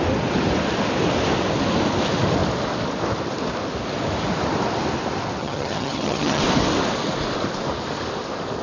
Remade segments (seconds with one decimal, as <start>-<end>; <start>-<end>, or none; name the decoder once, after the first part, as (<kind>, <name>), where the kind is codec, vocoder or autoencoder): 5.4-6.4 (vocoder, HiFi-GAN)